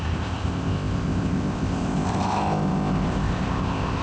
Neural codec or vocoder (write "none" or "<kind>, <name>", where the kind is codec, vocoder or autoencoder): codec, ZipCodec